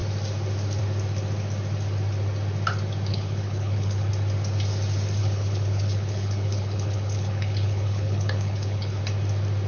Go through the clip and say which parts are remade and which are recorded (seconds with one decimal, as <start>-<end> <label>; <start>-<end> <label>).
0.0-3.1 recorded; 3.1-4.1 remade; 4.1-5.2 recorded; 5.2-9.0 remade; 9.0-9.7 recorded